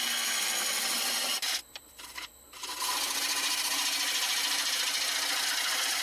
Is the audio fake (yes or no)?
no